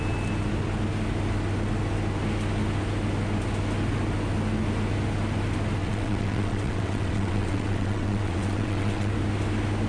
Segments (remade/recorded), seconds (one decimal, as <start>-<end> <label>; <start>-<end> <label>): 0.0-5.8 recorded; 5.8-9.1 remade; 9.1-9.9 recorded